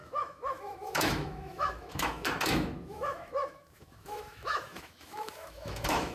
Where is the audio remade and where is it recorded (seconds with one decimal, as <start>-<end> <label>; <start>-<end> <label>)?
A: 0.0-6.1 remade